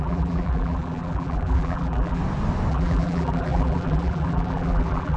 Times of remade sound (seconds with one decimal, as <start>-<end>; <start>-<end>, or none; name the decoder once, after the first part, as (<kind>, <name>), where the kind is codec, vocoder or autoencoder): 0.0-2.2 (vocoder, BigVGAN v2); 2.7-5.2